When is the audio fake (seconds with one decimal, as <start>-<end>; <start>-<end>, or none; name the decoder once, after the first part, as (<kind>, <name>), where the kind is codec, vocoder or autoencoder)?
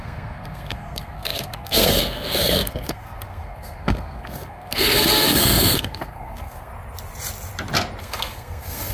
0.0-6.7 (codec, SNAC); 8.0-8.9